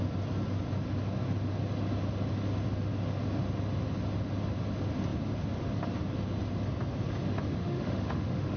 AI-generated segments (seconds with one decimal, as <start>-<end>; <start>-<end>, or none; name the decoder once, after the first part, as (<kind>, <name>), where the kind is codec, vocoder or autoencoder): 7.6-8.6 (autoencoder, DAC-VAE)